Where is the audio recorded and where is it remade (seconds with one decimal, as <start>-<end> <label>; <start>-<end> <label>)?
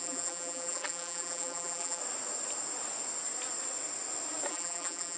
0.0-2.0 remade; 2.0-4.5 recorded; 4.5-5.2 remade